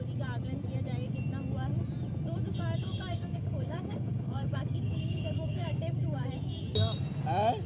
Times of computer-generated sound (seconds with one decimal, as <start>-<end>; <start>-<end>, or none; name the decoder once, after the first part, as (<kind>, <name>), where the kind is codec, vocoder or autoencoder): 2.8-6.3 (codec, DAC)